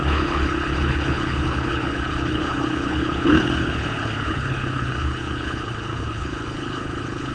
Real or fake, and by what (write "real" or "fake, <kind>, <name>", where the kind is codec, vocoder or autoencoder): fake, codec, HILCodec